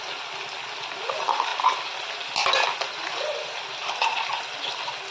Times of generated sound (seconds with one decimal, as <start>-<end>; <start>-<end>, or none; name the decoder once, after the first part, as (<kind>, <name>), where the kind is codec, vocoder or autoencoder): none